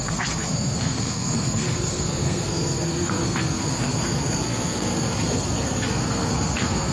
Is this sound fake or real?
fake